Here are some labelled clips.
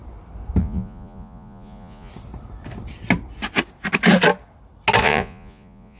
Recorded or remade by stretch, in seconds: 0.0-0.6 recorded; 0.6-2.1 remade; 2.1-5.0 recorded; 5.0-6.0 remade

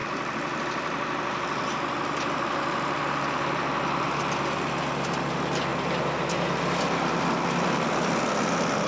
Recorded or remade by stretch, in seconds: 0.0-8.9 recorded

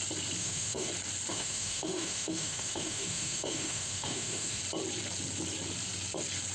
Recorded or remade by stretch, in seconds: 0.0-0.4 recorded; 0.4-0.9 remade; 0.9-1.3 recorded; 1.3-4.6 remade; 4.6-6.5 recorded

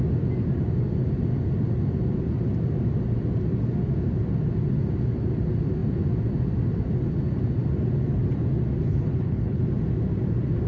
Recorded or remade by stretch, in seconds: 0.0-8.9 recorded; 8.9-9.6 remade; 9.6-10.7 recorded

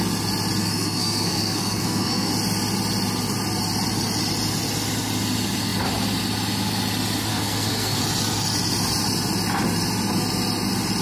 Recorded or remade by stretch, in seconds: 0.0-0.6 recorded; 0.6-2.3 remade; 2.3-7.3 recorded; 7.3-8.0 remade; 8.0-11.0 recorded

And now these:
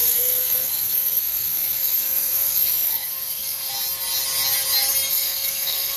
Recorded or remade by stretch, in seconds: 0.0-3.7 remade; 3.7-5.1 recorded; 5.1-6.0 remade